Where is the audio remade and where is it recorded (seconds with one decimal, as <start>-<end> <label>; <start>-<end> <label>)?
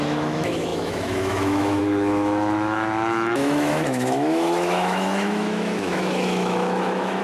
0.0-7.2 remade